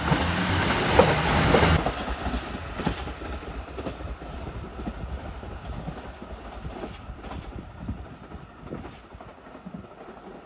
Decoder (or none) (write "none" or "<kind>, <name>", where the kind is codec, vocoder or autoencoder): vocoder, BigVGAN v2